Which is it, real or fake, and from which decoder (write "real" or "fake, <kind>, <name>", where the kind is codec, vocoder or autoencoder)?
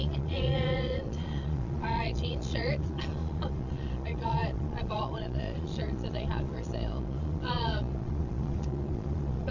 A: fake, vocoder, Vocos